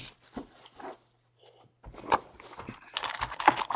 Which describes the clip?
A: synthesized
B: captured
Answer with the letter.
B